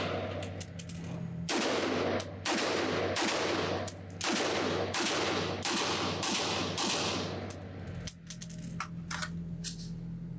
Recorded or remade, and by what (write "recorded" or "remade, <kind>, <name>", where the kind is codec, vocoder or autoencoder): recorded